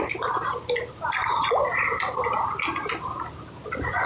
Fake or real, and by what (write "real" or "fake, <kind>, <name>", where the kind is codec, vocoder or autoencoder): real